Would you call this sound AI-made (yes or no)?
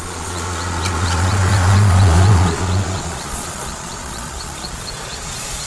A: yes